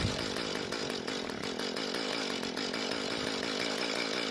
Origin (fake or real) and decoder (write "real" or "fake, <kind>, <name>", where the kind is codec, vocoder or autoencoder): real